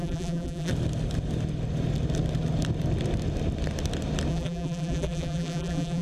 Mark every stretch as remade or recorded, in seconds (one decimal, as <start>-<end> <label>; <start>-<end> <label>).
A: 0.0-0.7 remade; 0.7-4.3 recorded; 4.3-6.0 remade